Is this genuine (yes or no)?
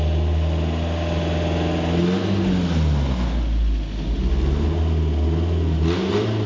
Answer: yes